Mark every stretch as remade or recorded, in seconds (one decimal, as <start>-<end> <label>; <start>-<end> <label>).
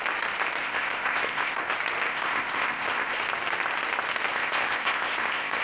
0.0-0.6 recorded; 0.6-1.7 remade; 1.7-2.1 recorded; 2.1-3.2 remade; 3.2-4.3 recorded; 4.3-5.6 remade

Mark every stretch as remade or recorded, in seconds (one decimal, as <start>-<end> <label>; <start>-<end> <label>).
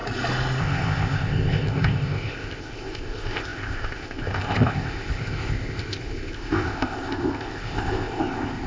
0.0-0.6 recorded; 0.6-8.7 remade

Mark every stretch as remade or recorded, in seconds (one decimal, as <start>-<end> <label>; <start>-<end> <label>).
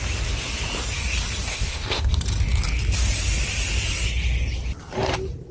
0.0-1.5 recorded; 1.5-2.1 remade; 2.1-5.5 recorded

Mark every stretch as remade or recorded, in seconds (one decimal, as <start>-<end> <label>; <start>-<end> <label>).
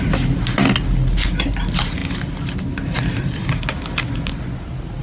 0.0-5.0 recorded